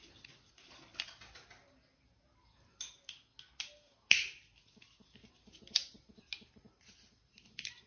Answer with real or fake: real